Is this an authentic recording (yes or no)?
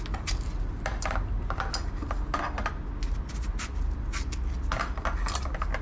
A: yes